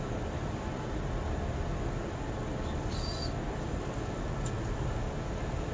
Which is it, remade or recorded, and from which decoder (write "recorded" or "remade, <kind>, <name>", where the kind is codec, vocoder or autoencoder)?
recorded